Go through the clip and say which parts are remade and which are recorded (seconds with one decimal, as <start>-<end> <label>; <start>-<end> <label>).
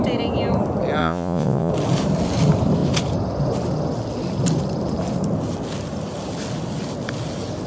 0.0-1.0 recorded; 1.0-1.7 remade; 1.7-7.7 recorded